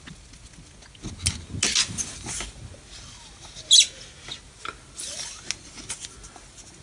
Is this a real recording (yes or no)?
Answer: yes